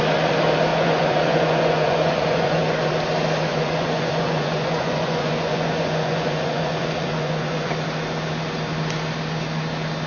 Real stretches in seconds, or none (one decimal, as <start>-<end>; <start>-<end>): 0.0-0.7; 2.9-3.5; 7.7-10.1